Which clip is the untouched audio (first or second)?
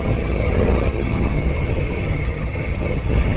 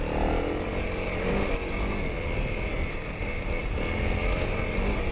second